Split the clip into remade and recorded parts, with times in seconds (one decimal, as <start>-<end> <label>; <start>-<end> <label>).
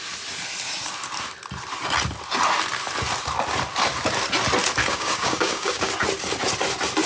0.0-4.8 recorded; 4.8-5.9 remade; 5.9-7.1 recorded